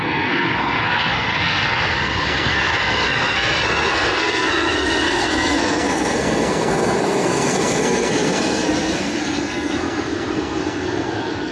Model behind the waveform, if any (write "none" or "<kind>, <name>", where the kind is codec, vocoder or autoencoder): codec, SNAC